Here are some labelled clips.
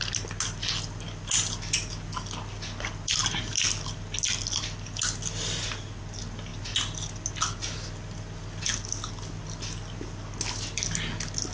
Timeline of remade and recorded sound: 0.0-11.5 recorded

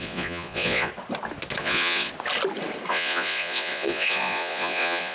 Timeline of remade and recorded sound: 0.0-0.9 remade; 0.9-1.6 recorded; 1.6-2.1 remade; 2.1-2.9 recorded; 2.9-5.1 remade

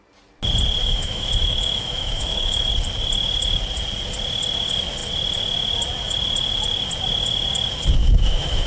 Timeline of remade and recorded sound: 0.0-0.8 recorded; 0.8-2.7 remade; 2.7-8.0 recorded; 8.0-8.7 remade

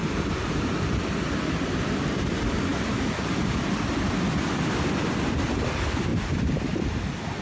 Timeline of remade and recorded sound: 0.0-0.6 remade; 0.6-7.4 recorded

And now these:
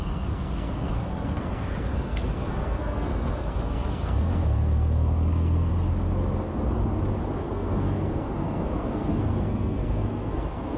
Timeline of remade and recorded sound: 0.0-5.7 remade; 5.7-7.4 recorded; 7.4-10.8 remade

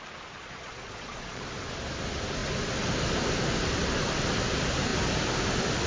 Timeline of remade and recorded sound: 0.0-0.4 recorded; 0.4-1.4 remade; 1.4-5.9 recorded

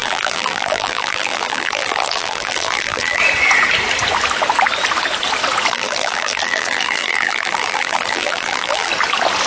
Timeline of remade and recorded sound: 0.0-3.2 remade; 3.2-5.7 recorded; 5.7-8.9 remade; 8.9-9.5 recorded

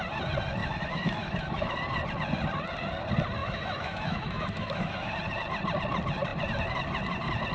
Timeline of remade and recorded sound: 0.0-0.6 recorded; 0.6-1.7 remade; 1.7-3.4 recorded; 3.4-5.2 remade; 5.2-7.5 recorded